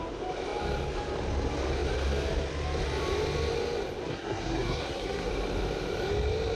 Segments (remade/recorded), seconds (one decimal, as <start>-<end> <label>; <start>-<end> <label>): 0.0-4.1 recorded; 4.1-5.3 remade; 5.3-6.6 recorded